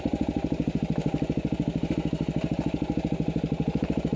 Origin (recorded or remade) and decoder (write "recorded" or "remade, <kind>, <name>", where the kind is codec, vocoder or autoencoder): recorded